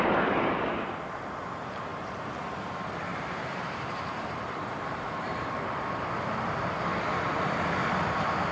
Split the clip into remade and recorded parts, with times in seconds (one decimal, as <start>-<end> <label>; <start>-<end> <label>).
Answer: 0.0-1.9 recorded; 1.9-2.4 remade; 2.4-3.1 recorded; 3.1-6.0 remade; 6.0-8.5 recorded